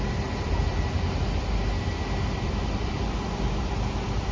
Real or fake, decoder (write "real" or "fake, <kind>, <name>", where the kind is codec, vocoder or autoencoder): fake, vocoder, BigVGAN v2